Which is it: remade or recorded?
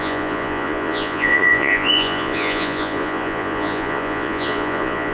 remade